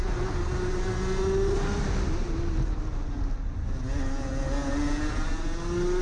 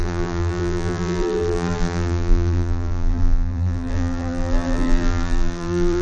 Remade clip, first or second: second